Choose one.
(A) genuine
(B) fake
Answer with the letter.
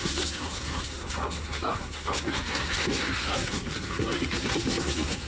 B